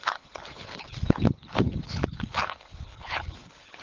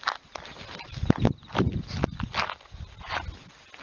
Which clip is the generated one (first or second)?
first